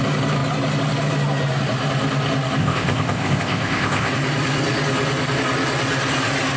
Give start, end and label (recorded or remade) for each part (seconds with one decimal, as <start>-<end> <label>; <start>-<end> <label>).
0.0-2.6 recorded; 2.6-4.1 remade; 4.1-6.6 recorded